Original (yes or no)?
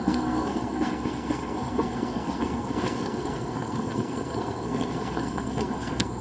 no